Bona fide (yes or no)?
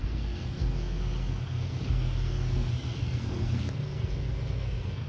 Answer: no